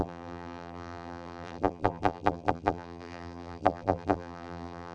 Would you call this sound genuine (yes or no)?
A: no